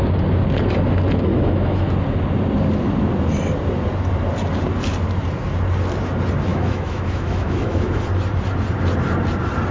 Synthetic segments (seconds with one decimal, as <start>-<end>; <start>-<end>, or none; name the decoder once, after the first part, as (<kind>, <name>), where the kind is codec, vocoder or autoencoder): 1.3-1.9 (autoencoder, DAC-VAE); 6.5-8.0